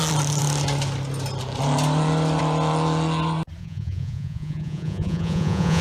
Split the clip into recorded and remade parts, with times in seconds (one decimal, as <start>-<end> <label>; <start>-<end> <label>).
0.0-3.6 recorded; 3.6-5.8 remade